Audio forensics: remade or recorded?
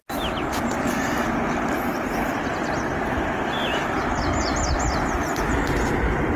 recorded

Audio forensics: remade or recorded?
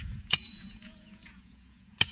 remade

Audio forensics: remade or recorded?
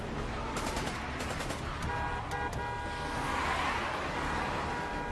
recorded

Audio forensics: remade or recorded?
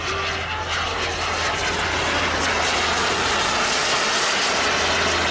recorded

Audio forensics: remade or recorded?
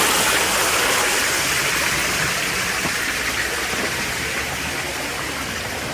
recorded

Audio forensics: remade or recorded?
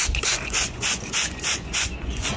remade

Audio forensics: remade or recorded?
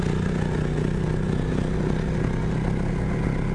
recorded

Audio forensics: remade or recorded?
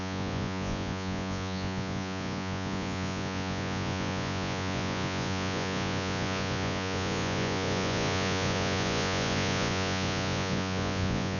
remade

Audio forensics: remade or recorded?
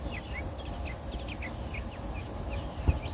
recorded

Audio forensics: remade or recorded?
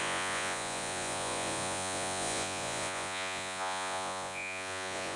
remade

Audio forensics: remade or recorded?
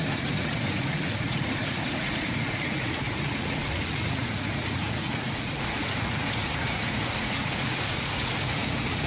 remade